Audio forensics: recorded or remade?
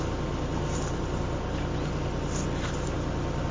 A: recorded